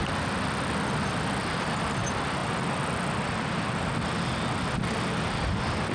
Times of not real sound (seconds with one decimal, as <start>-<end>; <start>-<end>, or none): none